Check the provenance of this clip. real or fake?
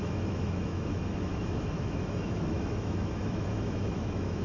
fake